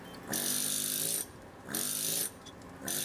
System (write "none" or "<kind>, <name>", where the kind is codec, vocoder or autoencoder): none